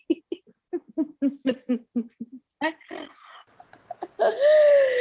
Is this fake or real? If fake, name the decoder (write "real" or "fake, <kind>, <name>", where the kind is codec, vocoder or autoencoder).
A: real